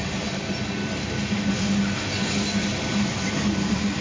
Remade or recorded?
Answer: recorded